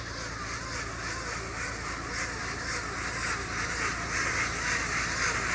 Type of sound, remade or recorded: recorded